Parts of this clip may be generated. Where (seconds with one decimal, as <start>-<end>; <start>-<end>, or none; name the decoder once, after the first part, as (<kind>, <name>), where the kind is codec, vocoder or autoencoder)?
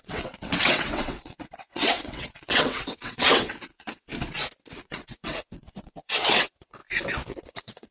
0.0-4.1 (vocoder, WaveNeXt); 4.7-6.8; 7.3-7.9